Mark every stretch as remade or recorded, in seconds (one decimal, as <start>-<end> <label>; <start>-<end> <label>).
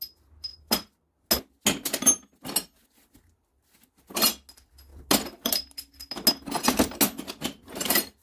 0.0-8.2 recorded